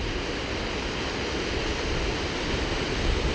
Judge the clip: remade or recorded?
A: recorded